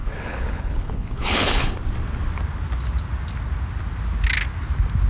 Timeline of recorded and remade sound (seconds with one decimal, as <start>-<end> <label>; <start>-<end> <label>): 0.0-1.7 remade; 1.7-5.1 recorded